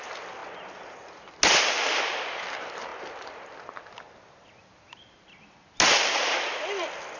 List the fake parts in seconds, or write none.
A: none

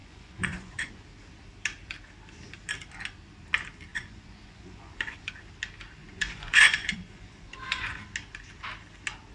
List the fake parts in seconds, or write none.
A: 0.0-0.9; 3.9-5.3; 6.0-8.0

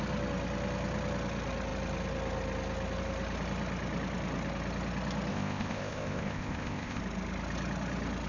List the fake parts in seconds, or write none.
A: 5.3-7.0

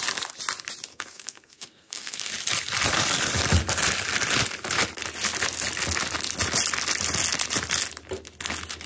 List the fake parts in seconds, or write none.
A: 0.9-2.3

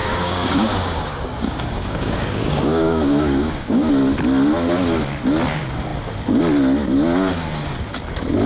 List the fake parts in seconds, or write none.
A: 0.0-3.9